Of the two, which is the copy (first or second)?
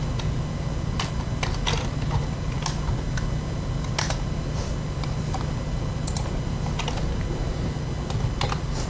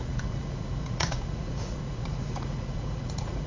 second